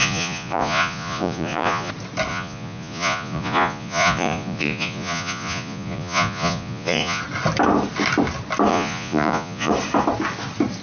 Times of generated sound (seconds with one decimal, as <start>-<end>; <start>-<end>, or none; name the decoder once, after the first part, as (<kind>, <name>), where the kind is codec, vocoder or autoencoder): 0.0-1.9 (vocoder, Vocos); 2.3-7.2; 8.7-9.7